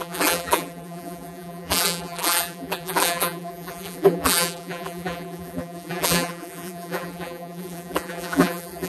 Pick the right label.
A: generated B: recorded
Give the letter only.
A